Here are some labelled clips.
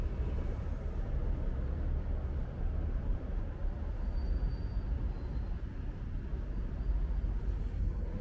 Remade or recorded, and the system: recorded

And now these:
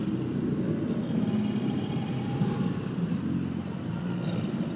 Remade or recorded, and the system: recorded